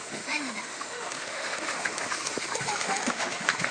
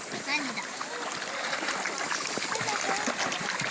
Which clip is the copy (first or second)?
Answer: first